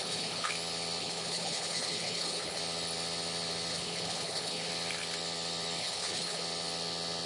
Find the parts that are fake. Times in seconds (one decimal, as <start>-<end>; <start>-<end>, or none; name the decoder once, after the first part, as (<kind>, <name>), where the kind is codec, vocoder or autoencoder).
0.0-0.5 (codec, HILCodec); 1.0-2.6; 3.7-4.7; 5.8-6.4